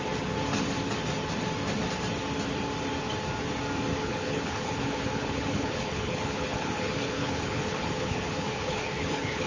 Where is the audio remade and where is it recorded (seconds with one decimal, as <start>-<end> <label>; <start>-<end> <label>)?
0.0-4.0 recorded; 4.0-9.5 remade